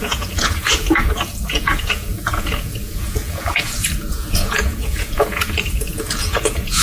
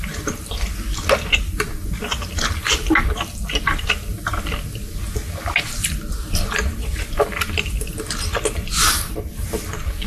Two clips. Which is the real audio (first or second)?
second